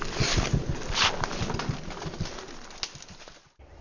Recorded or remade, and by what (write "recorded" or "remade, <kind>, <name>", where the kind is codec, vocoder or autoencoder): recorded